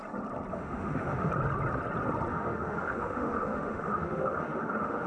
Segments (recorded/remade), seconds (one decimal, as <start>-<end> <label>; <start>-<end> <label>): 0.0-0.5 recorded; 0.5-1.3 remade; 1.3-2.3 recorded; 2.3-5.1 remade